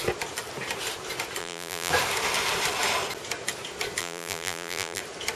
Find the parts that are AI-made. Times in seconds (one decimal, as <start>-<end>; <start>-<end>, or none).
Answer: 1.4-1.9; 4.0-5.0